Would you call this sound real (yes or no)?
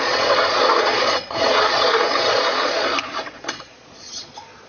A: no